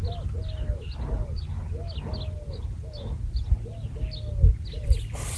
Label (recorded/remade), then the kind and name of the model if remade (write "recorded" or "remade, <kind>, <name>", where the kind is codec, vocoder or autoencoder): recorded